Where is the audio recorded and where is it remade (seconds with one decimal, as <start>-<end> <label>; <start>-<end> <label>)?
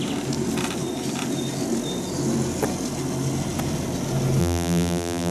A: 0.0-4.4 recorded; 4.4-5.3 remade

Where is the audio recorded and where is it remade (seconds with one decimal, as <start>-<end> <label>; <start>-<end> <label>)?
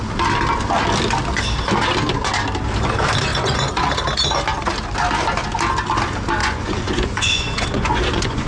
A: 0.0-3.3 recorded; 3.3-3.9 remade; 3.9-6.4 recorded; 6.4-8.5 remade